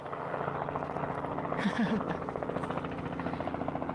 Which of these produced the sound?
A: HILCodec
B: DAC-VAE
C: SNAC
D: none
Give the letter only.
D